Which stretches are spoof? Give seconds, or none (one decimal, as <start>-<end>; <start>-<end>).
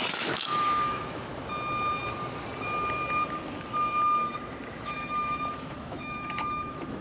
0.0-1.3; 4.7-7.0